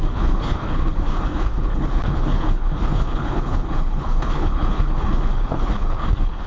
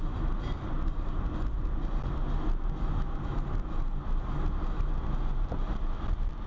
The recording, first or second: second